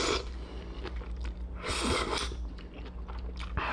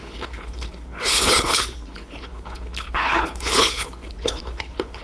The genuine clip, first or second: first